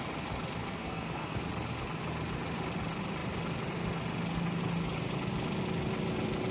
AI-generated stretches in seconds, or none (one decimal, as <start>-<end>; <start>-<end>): 0.6-1.4

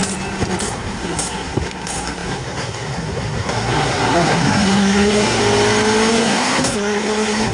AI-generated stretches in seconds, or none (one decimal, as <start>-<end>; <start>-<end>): 0.6-5.4; 6.1-7.5

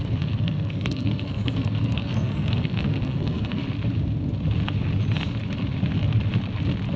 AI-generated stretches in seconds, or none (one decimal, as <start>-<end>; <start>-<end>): 0.0-3.6

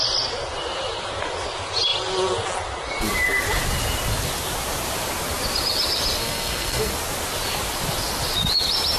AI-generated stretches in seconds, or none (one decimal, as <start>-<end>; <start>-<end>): 6.2-6.9

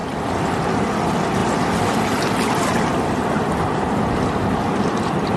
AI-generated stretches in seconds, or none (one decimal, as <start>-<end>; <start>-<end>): none